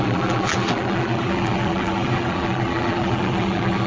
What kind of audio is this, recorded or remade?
remade